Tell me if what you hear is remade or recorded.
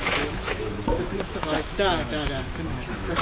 remade